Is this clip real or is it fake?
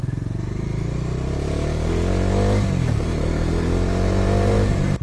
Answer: real